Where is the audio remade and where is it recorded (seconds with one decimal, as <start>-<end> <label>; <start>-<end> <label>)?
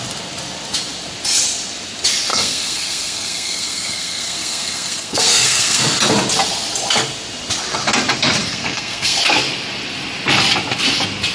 0.0-2.3 recorded; 2.3-5.8 remade; 5.8-8.4 recorded; 8.4-9.2 remade; 9.2-11.3 recorded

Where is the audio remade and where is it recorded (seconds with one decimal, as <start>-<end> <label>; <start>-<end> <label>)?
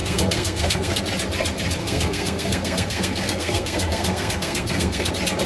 0.0-1.0 remade; 1.0-1.8 recorded; 1.8-5.1 remade; 5.1-5.5 recorded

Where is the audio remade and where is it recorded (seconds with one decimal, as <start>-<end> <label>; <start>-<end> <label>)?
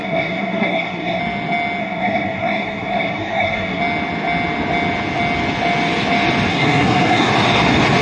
0.0-1.2 remade; 1.2-1.8 recorded; 1.8-3.8 remade; 3.8-6.5 recorded; 6.5-7.3 remade; 7.3-8.0 recorded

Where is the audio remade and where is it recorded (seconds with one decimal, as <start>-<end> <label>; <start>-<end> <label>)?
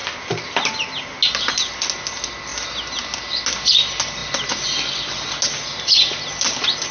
0.0-6.9 recorded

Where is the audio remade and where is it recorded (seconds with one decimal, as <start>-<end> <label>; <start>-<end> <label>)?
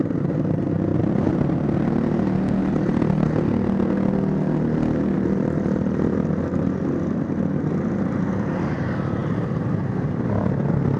0.0-11.0 recorded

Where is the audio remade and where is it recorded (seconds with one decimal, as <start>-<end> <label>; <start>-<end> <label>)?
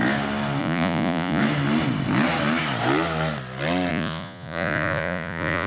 0.0-0.6 recorded; 0.6-1.4 remade; 1.4-3.9 recorded; 3.9-5.7 remade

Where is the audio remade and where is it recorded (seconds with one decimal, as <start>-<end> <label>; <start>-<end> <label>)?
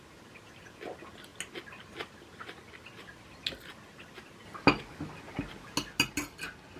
0.0-6.8 recorded